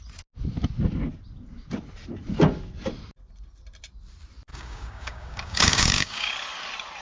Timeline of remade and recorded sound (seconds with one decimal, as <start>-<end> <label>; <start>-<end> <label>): 0.0-4.5 recorded; 4.5-6.3 remade; 6.3-7.0 recorded